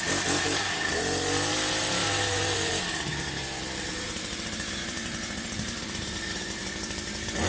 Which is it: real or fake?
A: fake